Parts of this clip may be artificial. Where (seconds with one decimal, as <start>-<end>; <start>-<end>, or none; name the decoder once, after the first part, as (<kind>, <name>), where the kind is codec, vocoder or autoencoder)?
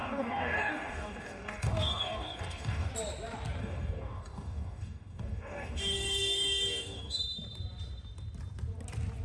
0.0-2.9 (codec, DAC); 3.6-7.2